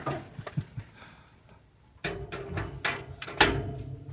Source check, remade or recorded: recorded